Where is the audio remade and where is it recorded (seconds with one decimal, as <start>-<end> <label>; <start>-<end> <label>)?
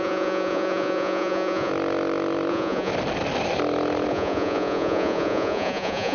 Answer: 0.0-1.7 remade; 1.7-2.5 recorded; 2.5-2.9 remade; 2.9-4.1 recorded; 4.1-6.1 remade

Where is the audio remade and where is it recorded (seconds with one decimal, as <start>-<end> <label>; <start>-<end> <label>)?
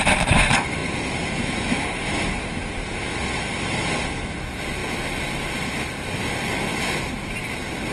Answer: 0.0-7.9 recorded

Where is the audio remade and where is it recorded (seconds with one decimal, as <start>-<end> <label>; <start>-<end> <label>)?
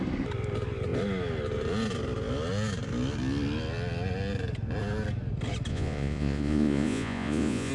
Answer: 0.0-5.7 recorded; 5.7-7.7 remade